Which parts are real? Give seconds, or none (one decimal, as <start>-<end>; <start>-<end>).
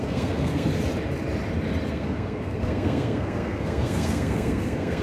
0.7-1.9